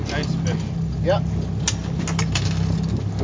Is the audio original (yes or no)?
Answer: yes